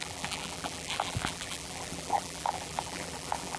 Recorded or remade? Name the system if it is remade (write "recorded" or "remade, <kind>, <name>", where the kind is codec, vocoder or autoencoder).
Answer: remade, vocoder, BigVGAN v2